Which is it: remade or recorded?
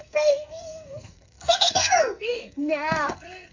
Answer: remade